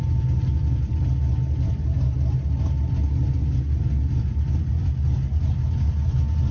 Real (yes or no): yes